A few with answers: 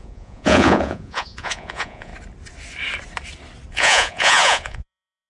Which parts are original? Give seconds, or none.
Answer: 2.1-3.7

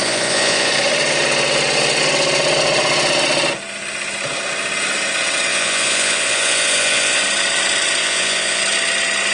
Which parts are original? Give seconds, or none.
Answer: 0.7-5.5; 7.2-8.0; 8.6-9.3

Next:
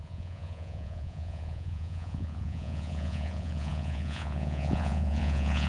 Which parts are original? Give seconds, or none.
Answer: none